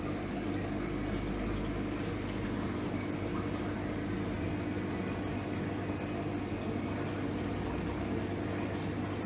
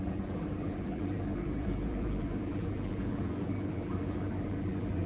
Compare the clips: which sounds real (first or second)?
first